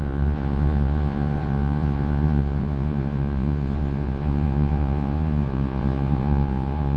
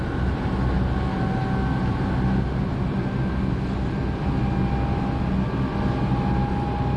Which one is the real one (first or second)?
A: second